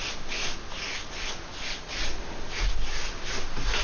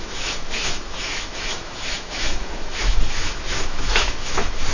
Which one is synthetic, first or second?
second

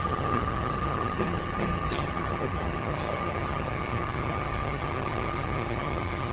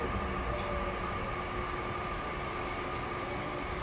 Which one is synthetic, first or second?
first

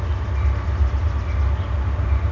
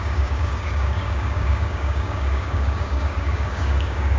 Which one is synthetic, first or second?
second